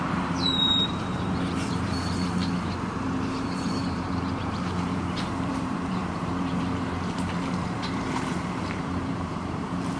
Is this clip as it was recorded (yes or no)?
no